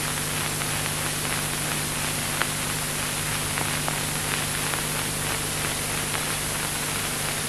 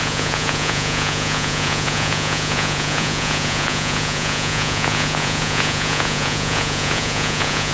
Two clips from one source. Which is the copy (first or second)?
second